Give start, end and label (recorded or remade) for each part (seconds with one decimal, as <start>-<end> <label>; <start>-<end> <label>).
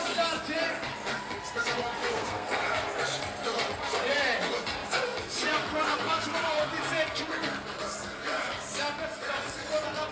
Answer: 0.0-2.1 recorded; 2.1-2.6 remade; 2.6-10.1 recorded